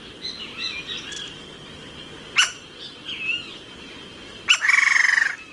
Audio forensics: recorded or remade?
recorded